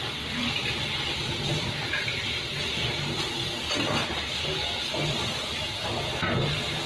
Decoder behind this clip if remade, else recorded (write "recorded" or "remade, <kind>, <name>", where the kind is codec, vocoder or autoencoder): recorded